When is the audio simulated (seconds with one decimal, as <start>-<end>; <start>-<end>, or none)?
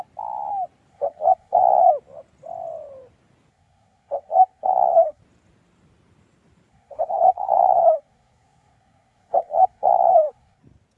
0.9-1.9; 3.5-5.2; 6.7-10.6